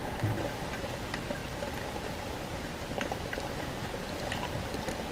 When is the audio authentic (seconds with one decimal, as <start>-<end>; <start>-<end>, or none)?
0.0-5.1